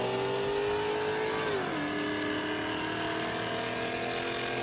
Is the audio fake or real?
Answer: real